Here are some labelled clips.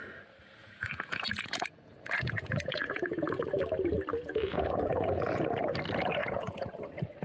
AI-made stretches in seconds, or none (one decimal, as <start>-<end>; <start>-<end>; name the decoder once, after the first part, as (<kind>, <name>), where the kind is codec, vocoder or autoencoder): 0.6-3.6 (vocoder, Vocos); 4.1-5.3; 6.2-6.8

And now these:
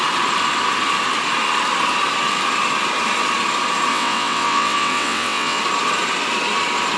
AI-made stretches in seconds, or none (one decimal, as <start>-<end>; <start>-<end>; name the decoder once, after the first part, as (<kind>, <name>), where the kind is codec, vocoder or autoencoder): 3.9-5.6 (vocoder, WaveNeXt)

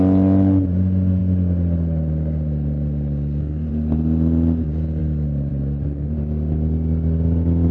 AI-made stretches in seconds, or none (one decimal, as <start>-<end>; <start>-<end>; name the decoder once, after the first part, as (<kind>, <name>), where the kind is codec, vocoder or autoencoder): 5.0-5.5 (vocoder, BigVGAN v2)

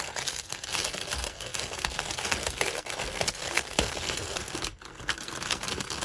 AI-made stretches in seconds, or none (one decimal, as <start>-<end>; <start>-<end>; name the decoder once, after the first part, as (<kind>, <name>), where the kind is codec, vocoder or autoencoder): 0.0-6.0 (codec, SNAC)